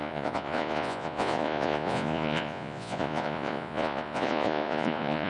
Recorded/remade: remade